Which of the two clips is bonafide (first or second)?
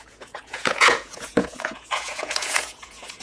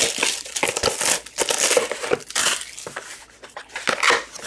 second